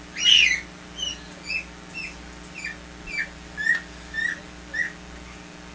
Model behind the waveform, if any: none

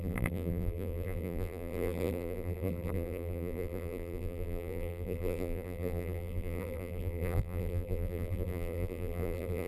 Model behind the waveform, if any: vocoder, BigVGAN v2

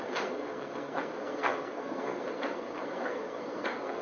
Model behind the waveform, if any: codec, SNAC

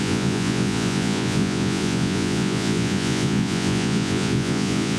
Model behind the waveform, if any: vocoder, Vocos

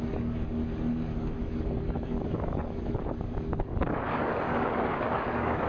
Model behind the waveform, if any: codec, DAC